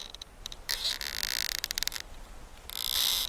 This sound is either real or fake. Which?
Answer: real